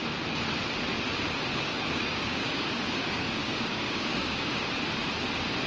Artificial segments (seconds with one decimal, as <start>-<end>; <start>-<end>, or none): 1.5-4.7